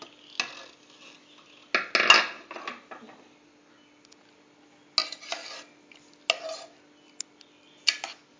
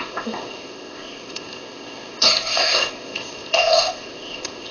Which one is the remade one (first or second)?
second